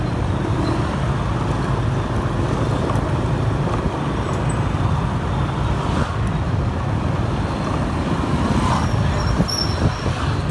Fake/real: real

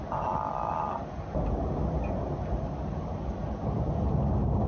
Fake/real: real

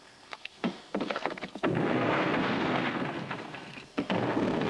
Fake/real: fake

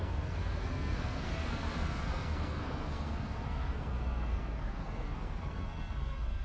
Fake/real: fake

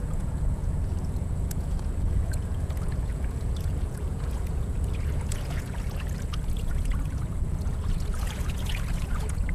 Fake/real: fake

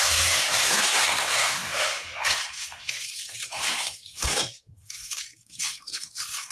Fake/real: fake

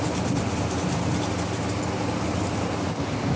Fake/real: real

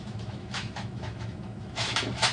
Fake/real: fake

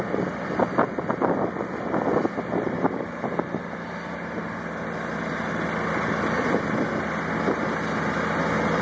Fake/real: real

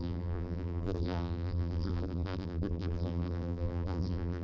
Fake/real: fake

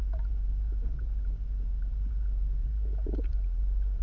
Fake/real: fake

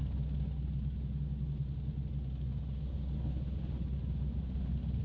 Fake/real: real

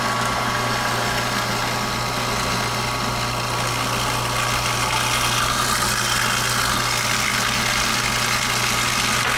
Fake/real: real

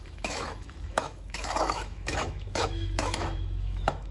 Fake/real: fake